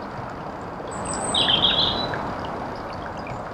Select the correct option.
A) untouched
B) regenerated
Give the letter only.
A